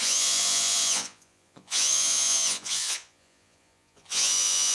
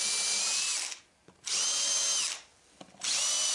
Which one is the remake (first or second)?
first